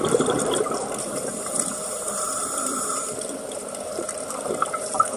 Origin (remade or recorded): remade